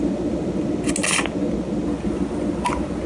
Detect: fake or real real